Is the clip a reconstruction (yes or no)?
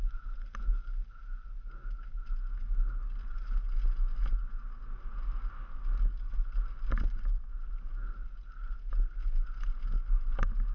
no